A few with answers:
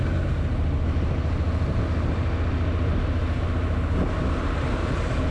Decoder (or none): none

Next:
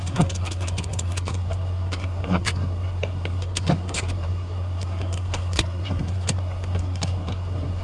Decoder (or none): codec, SNAC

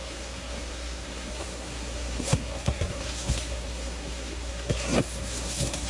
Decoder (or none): codec, SNAC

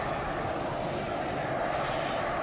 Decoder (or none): none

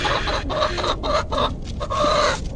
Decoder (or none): none